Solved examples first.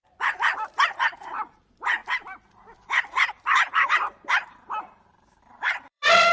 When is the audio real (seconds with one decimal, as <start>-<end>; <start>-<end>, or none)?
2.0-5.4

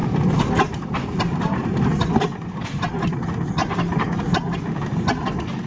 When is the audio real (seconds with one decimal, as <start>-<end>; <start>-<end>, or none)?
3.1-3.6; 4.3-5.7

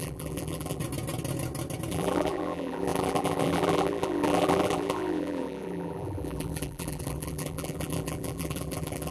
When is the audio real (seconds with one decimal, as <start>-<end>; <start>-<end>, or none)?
0.8-1.9

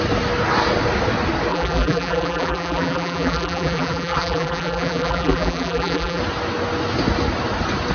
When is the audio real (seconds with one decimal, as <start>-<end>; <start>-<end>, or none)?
0.0-1.5; 6.2-7.9